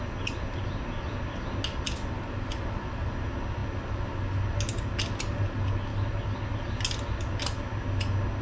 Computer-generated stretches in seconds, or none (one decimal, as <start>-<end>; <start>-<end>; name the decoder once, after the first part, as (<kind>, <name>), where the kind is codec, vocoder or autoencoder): none